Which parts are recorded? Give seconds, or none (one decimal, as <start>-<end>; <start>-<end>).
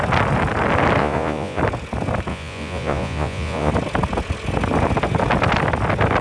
0.0-1.0; 1.6-2.3; 3.7-6.2